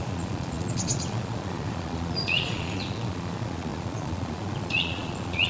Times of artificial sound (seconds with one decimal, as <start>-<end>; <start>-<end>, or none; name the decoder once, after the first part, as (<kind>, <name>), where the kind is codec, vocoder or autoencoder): 0.0-5.5 (vocoder, Vocos)